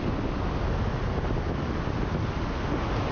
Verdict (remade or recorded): recorded